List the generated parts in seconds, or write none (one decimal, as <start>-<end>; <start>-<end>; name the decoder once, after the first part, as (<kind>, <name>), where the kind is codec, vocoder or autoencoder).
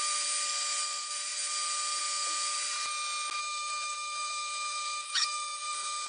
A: 3.4-6.1 (autoencoder, DAC-VAE)